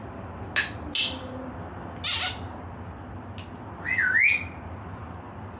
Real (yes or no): yes